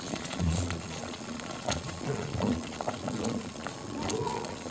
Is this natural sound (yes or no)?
no